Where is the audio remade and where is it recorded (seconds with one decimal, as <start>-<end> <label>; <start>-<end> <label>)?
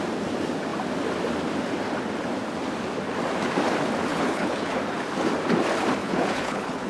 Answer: 0.0-4.1 recorded; 4.1-4.8 remade; 4.8-6.0 recorded; 6.0-6.9 remade